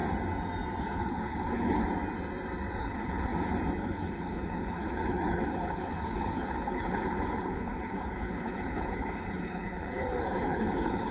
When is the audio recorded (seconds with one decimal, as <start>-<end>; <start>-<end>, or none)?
0.0-0.8; 1.8-2.8; 3.3-3.8